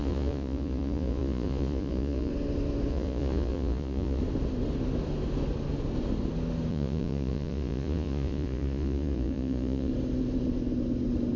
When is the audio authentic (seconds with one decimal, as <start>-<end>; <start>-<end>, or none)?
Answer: 2.3-2.9; 4.2-6.7; 9.9-11.4